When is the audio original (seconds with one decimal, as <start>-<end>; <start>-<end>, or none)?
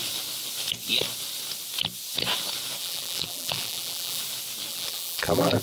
0.0-2.8; 4.2-4.7